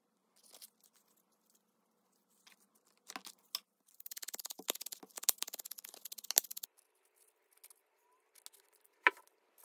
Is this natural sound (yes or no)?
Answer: yes